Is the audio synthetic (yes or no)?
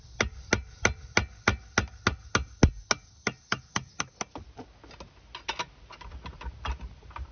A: no